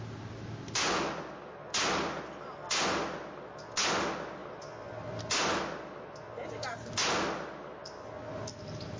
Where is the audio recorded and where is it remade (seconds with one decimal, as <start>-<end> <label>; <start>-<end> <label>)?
0.0-9.0 recorded